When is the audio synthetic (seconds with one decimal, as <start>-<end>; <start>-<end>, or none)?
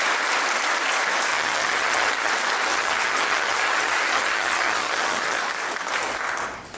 1.3-2.3; 2.7-5.4